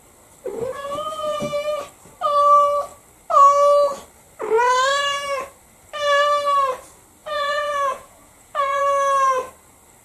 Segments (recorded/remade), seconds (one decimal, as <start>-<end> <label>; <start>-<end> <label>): 0.0-0.5 recorded; 0.5-1.4 remade; 1.4-7.2 recorded; 7.2-8.8 remade; 8.8-10.0 recorded